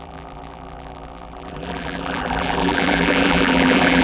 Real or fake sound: fake